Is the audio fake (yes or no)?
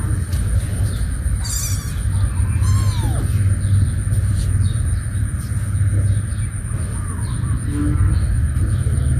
no